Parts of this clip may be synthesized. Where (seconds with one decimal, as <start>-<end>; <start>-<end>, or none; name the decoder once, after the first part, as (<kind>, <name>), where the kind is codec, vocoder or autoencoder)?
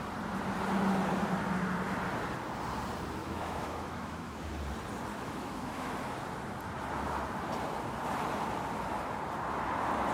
3.2-4.5 (autoencoder, DAC-VAE); 5.1-5.9